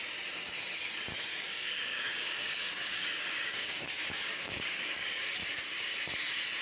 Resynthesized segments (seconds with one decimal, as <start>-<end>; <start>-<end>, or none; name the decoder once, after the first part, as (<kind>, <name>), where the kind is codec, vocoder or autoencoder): 1.3-5.3 (codec, DAC)